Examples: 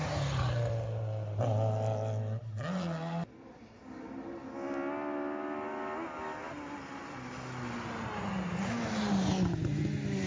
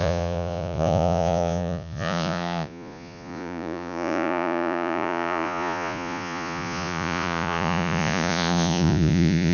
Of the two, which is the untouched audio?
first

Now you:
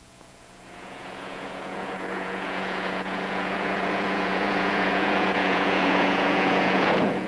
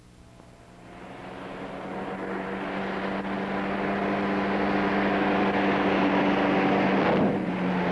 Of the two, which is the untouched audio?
second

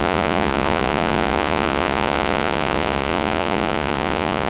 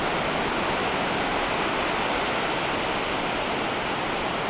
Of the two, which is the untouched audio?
second